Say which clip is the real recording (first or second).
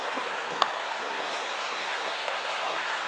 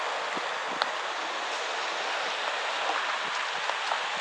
second